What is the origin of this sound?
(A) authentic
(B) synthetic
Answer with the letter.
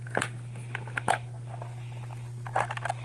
A